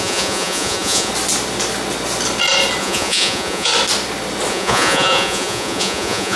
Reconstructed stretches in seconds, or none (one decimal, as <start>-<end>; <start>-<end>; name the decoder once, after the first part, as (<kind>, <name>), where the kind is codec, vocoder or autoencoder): 0.0-1.1 (vocoder, Vocos); 2.8-3.7; 4.5-6.4